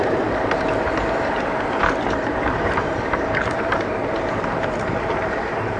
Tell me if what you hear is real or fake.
fake